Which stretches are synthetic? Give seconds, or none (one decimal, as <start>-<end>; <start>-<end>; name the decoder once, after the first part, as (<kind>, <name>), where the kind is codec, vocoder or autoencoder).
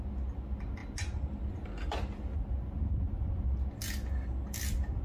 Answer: none